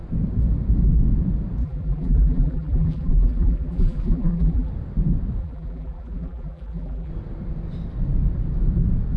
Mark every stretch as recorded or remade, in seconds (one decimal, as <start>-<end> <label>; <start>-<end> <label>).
0.0-1.6 recorded; 1.6-4.7 remade; 4.7-5.4 recorded; 5.4-7.1 remade; 7.1-9.2 recorded